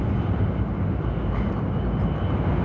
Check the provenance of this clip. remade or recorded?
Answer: recorded